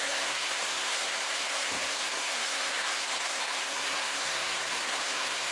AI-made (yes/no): yes